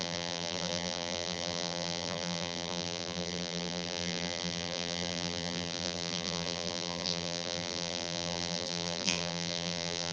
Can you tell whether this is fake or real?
fake